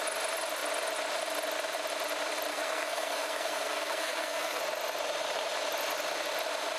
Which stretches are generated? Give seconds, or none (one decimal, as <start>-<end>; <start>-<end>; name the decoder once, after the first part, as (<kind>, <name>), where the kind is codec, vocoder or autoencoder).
2.5-4.6 (codec, SNAC)